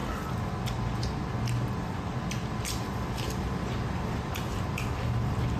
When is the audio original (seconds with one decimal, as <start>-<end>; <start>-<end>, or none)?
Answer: 0.0-5.6